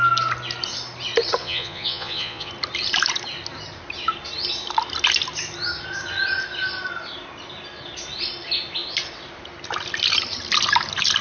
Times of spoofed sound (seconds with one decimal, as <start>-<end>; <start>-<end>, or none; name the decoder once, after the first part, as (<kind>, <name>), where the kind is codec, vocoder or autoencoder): 1.4-2.5 (vocoder, Vocos)

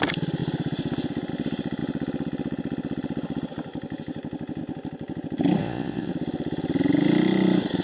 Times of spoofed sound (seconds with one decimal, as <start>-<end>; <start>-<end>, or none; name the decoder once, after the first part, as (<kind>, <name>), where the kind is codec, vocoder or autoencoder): 5.6-6.1 (vocoder, Vocos)